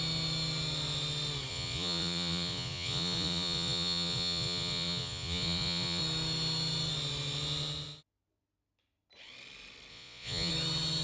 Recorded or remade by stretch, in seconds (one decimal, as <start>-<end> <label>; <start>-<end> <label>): 0.0-1.5 recorded; 1.5-6.0 remade; 6.0-9.9 recorded; 9.9-10.5 remade; 10.5-11.0 recorded